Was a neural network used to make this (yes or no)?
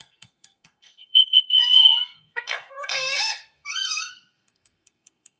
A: yes